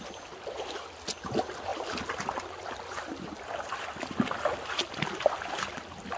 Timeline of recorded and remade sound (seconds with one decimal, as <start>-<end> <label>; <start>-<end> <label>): 0.0-6.2 recorded